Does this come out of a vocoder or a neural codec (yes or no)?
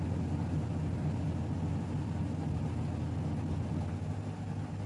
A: no